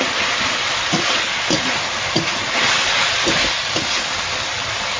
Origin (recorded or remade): recorded